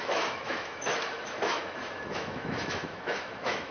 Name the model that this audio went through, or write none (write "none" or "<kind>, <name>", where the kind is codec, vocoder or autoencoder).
autoencoder, DAC-VAE